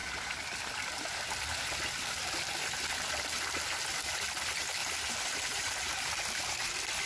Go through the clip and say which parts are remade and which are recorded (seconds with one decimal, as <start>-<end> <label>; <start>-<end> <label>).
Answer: 0.0-4.8 recorded; 4.8-5.9 remade; 5.9-7.1 recorded